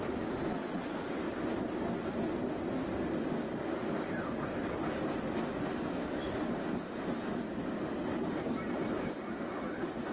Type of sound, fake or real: real